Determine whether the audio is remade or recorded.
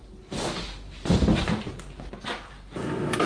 recorded